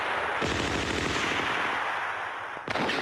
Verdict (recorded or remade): recorded